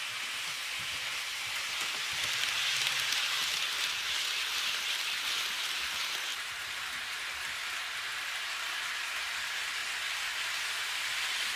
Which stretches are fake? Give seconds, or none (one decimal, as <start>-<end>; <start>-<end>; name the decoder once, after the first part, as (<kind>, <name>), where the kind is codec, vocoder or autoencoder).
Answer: 6.3-7.3 (vocoder, BigVGAN v2)